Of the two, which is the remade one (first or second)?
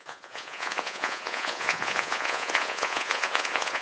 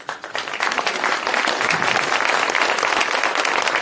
first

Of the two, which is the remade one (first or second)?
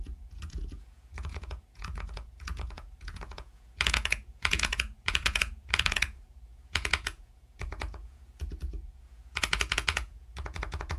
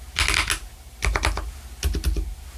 first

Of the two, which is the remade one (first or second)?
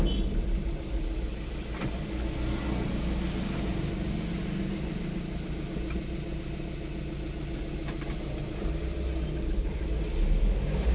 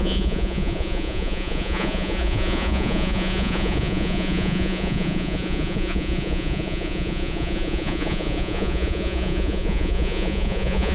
second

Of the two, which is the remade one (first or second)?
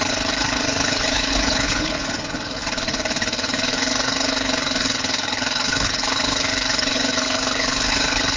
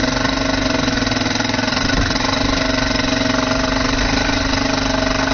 first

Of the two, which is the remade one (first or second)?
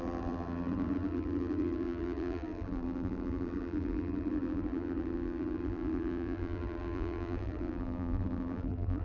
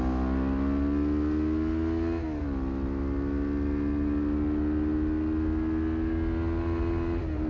first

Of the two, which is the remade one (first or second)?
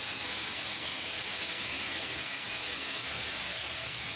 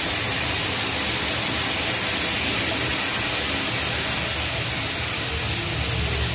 first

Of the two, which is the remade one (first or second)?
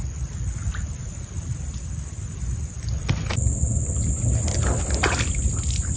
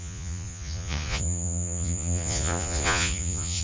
second